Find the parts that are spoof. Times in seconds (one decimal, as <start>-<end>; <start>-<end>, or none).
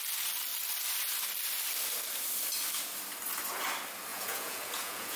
4.1-5.2